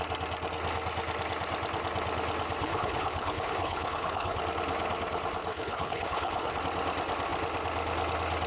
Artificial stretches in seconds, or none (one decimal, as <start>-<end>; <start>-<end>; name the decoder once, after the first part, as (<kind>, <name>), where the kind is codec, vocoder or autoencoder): 2.6-4.4 (codec, HILCodec); 5.5-6.6